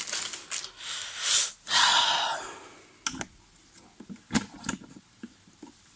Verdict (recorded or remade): recorded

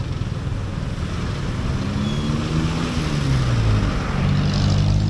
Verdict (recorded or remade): recorded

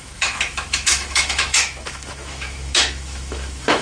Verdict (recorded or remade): remade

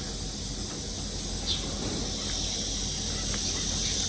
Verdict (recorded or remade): recorded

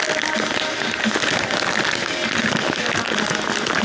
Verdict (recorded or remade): recorded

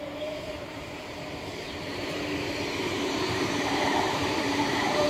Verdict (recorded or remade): remade